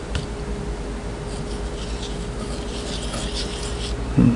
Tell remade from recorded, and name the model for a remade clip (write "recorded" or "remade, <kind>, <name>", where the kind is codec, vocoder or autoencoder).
recorded